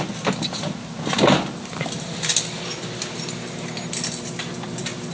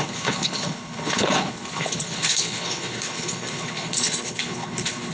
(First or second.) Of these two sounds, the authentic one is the first